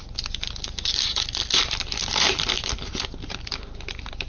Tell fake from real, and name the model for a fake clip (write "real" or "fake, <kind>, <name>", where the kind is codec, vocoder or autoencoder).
real